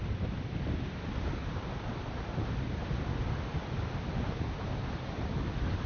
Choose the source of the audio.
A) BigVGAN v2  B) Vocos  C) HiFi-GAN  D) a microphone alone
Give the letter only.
D